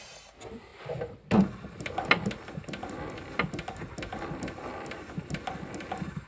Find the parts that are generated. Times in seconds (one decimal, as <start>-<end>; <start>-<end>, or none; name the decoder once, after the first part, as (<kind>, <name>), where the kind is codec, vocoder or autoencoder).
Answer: none